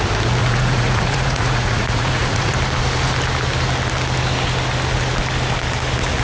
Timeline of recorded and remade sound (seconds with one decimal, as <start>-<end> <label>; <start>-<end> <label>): 0.0-0.4 recorded; 0.4-2.5 remade; 2.5-6.2 recorded